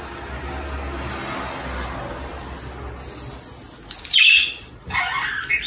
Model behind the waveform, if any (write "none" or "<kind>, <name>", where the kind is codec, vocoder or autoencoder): none